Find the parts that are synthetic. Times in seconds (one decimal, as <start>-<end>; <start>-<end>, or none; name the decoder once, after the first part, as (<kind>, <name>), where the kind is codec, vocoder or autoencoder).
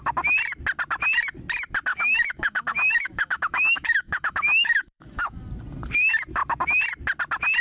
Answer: 1.9-5.4 (autoencoder, DAC-VAE)